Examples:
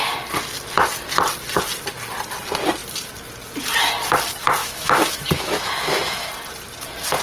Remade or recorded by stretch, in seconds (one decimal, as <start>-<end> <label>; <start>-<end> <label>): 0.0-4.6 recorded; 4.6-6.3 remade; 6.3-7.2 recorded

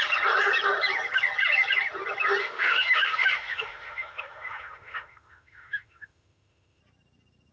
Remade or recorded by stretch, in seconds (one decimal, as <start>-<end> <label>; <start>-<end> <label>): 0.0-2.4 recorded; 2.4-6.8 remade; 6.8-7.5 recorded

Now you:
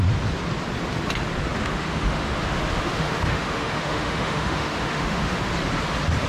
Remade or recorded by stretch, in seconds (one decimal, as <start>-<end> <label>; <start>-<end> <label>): 0.0-1.6 recorded; 1.6-5.4 remade; 5.4-6.3 recorded

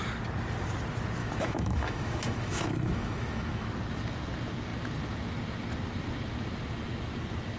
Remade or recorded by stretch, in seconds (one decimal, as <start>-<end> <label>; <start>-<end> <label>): 0.0-1.2 recorded; 1.2-3.7 remade; 3.7-7.6 recorded

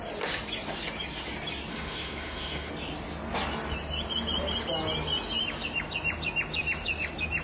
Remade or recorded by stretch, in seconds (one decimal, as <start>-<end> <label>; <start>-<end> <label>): 0.0-1.7 recorded; 1.7-2.7 remade; 2.7-7.4 recorded

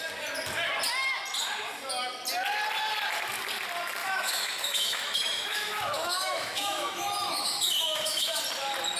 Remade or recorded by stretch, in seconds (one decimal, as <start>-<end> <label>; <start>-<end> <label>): 0.0-4.0 recorded; 4.0-8.4 remade; 8.4-9.0 recorded